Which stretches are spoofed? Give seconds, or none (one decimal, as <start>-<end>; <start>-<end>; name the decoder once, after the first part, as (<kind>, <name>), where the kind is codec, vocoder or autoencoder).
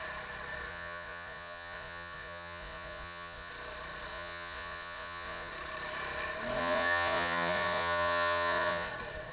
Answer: 0.7-3.5 (vocoder, Vocos); 4.1-5.5; 6.6-8.9